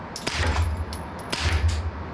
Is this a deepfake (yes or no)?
no